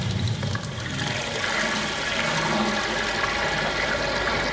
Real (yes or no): yes